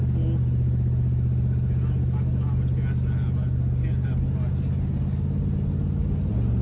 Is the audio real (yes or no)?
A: yes